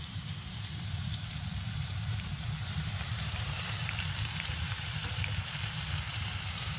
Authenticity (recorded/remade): remade